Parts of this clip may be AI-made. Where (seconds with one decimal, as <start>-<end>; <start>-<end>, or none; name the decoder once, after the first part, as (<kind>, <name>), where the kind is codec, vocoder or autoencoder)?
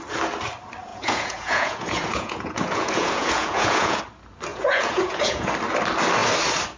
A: 0.9-4.0 (vocoder, Vocos); 4.5-5.5